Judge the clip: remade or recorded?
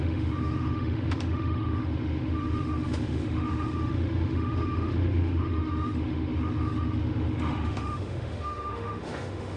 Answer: remade